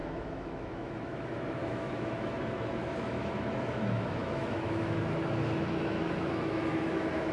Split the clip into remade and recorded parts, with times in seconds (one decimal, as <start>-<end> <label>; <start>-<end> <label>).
0.0-7.3 remade